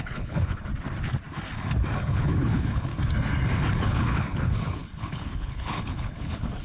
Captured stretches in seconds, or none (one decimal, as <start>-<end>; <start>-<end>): 0.7-2.1; 2.9-3.8